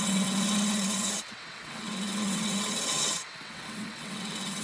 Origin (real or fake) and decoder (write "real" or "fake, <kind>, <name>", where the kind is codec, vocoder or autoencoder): fake, vocoder, WaveNeXt